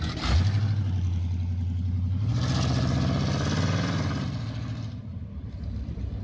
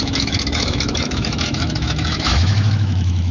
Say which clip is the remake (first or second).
second